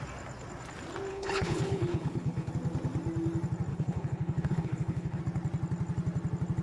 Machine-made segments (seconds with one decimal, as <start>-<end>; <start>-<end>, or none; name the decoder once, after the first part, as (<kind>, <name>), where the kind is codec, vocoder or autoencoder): 1.1-2.5 (codec, HILCodec); 3.7-5.2